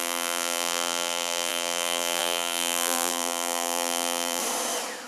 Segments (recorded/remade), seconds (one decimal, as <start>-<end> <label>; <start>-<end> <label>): 0.0-4.4 remade; 4.4-5.1 recorded